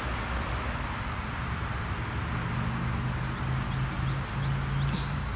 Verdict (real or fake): real